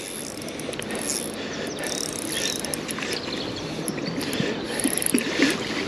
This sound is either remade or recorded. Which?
recorded